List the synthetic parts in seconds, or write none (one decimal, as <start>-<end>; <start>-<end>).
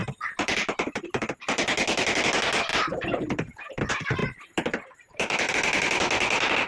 0.0-1.6; 2.7-3.8; 4.2-5.5